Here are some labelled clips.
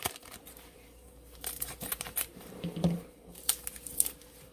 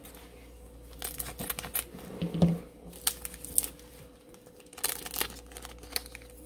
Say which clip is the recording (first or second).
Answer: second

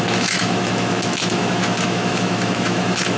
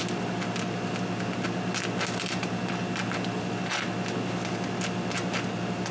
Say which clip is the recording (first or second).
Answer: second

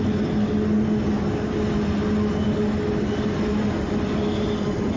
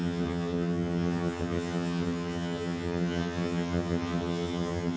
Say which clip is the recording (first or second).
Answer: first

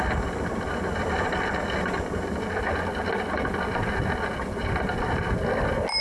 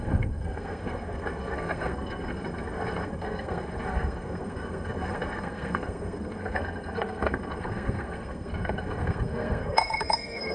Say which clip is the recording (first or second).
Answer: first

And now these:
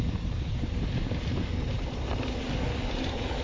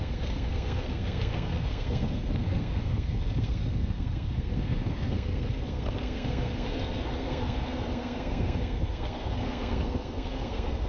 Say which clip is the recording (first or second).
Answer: first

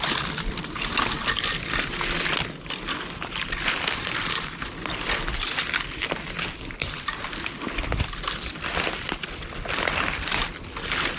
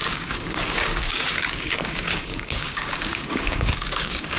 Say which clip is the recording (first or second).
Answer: first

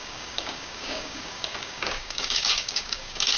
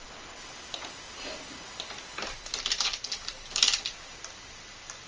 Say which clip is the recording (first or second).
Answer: second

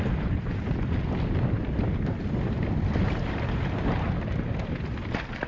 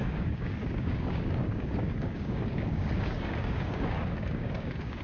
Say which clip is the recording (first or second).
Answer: first